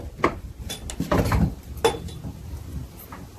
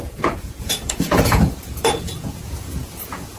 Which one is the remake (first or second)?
second